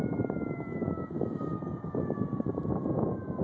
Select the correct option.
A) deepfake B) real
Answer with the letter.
B